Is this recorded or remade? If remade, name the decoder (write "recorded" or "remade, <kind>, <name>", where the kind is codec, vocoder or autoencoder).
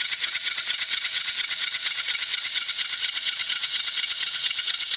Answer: remade, vocoder, WaveNeXt